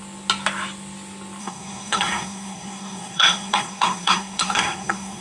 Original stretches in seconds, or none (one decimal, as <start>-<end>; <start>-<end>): 0.0-1.4

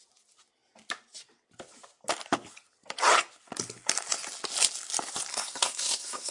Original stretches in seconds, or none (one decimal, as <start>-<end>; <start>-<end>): 0.0-5.3

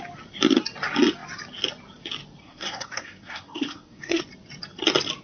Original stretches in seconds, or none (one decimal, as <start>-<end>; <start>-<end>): 0.0-2.4; 4.2-5.2

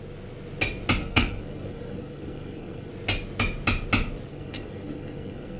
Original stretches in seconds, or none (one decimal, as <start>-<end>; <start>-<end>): 0.0-1.0; 2.9-4.3